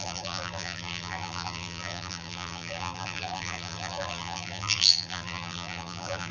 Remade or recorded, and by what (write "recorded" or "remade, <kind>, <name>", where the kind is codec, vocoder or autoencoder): remade, vocoder, BigVGAN v2